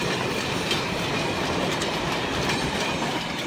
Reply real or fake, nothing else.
real